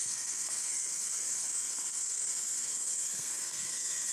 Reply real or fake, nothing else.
fake